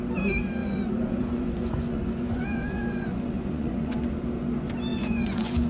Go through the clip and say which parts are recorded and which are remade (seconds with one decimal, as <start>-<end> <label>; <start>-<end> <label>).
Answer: 0.0-0.6 recorded; 0.6-4.0 remade; 4.0-4.9 recorded; 4.9-5.7 remade